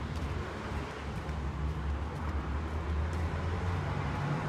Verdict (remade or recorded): recorded